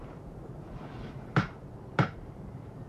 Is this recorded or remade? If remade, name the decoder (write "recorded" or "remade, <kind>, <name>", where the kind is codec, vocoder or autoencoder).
remade, vocoder, BigVGAN v2